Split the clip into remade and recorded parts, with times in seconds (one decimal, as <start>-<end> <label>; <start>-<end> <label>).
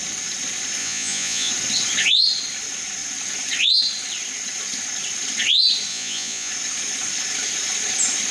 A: 0.0-0.8 recorded; 0.8-1.5 remade; 1.5-5.9 recorded; 5.9-6.5 remade; 6.5-8.3 recorded